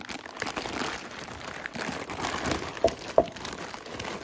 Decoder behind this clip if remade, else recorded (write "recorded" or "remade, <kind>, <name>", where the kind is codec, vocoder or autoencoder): recorded